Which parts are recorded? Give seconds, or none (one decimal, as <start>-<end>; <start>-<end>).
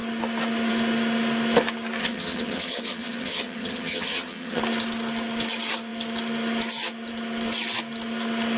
0.0-2.0; 4.6-8.6